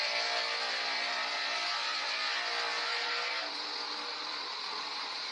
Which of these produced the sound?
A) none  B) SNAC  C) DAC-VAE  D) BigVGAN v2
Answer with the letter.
A